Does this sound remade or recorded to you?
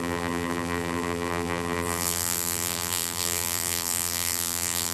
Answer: remade